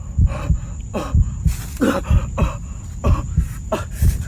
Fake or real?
real